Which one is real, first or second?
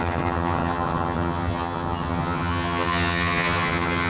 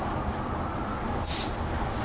second